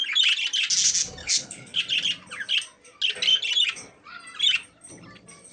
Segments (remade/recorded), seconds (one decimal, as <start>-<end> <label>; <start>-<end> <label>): 0.0-1.2 recorded; 1.2-1.8 remade; 1.8-5.5 recorded

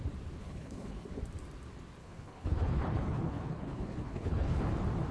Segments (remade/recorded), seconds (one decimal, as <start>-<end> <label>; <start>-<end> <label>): 0.0-0.4 recorded; 0.4-1.2 remade; 1.2-2.0 recorded; 2.0-4.6 remade; 4.6-5.1 recorded

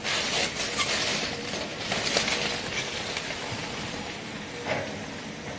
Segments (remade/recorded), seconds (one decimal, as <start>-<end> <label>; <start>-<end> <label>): 0.0-5.6 recorded

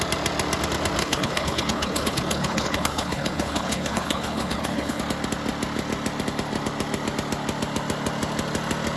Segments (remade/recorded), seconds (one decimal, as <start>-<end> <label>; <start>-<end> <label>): 0.0-1.0 recorded; 1.0-5.0 remade; 5.0-9.0 recorded

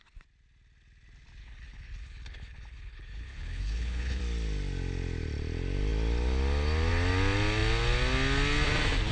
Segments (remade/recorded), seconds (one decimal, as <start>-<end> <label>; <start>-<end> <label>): 0.0-1.4 recorded; 1.4-4.2 remade; 4.2-9.1 recorded

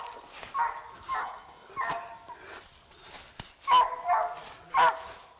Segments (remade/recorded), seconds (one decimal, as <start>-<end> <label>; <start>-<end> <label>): 0.0-1.2 recorded; 1.2-1.7 remade; 1.7-5.4 recorded

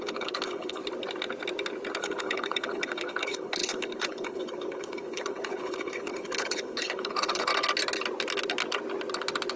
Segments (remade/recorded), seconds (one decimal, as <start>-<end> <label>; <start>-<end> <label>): 0.0-0.8 remade; 0.8-2.0 recorded; 2.0-7.5 remade; 7.5-9.6 recorded

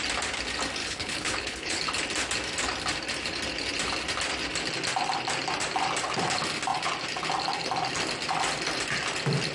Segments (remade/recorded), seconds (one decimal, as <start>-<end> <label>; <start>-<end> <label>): 0.0-0.8 recorded; 0.8-1.8 remade; 1.8-9.5 recorded